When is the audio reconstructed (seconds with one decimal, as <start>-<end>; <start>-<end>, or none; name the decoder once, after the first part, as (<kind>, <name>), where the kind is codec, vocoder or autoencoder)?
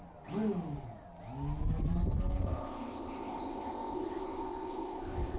2.4-5.4 (codec, ZipCodec)